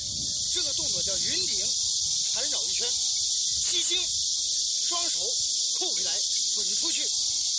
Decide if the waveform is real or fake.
real